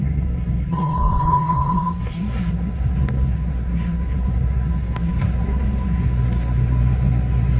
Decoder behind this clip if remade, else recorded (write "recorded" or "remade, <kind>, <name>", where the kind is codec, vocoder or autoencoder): remade, codec, SNAC